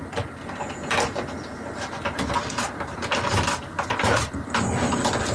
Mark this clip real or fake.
real